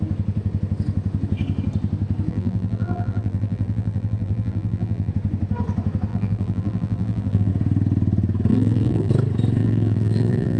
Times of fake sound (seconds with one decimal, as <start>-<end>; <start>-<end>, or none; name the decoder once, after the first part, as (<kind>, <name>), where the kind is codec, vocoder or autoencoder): 2.3-5.1 (vocoder, BigVGAN v2); 6.1-7.5; 8.5-9.1; 9.6-10.6